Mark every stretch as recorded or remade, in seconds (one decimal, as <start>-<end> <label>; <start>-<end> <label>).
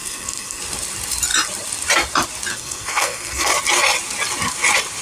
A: 0.0-0.6 remade; 0.6-2.5 recorded; 2.5-3.5 remade; 3.5-5.0 recorded